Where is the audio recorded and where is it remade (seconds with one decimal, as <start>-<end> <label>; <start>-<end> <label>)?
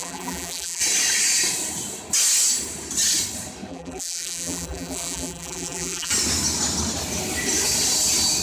0.0-0.8 remade; 0.8-3.7 recorded; 3.7-6.1 remade; 6.1-8.4 recorded